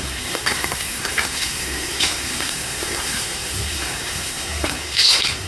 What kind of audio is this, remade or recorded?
remade